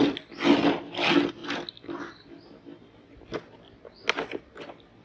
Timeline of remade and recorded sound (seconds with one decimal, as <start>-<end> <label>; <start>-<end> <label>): 0.0-5.0 recorded